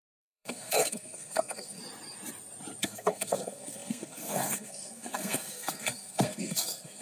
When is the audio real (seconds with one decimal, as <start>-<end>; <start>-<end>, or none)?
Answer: 1.8-2.8